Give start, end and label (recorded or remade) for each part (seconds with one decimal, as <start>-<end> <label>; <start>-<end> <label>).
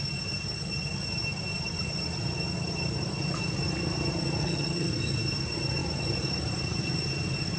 0.0-4.4 recorded; 4.4-4.9 remade; 4.9-7.6 recorded